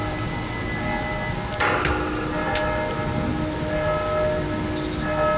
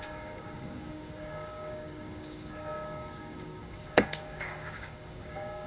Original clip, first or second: first